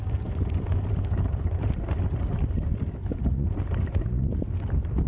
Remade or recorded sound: recorded